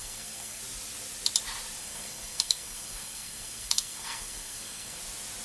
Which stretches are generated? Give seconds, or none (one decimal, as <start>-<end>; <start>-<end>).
0.0-0.6; 1.8-5.0